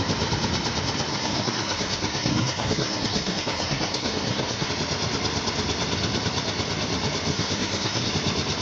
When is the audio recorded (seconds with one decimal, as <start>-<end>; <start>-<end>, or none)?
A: 0.0-1.1; 4.7-7.3; 8.1-8.6